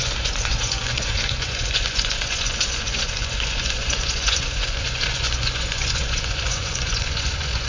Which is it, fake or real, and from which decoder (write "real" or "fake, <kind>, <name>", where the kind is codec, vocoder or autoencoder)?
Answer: fake, vocoder, Vocos